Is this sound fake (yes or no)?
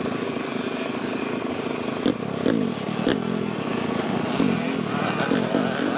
no